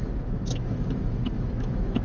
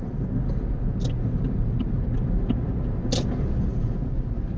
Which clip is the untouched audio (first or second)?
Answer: second